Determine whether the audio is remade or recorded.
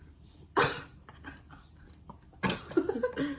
recorded